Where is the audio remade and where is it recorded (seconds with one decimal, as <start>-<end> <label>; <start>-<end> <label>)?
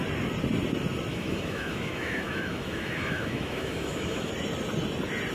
0.0-1.1 recorded; 1.1-4.3 remade; 4.3-5.3 recorded